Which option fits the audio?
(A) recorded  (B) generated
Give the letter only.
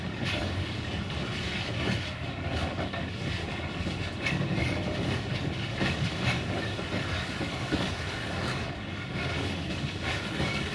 B